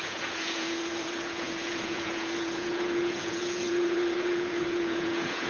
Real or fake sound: fake